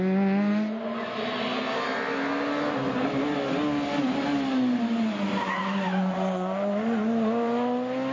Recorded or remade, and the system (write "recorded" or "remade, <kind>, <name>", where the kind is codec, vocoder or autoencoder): recorded